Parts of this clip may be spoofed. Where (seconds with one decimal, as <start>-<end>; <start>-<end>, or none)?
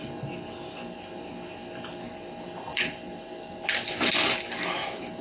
2.7-3.3